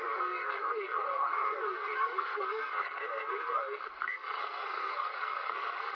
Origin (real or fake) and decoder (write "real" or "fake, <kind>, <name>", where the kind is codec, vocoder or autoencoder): fake, codec, SNAC